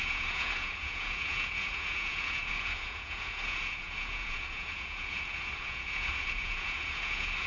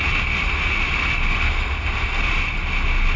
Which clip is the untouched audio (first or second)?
second